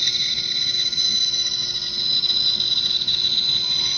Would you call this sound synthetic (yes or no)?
no